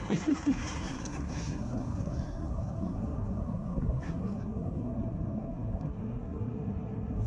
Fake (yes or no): yes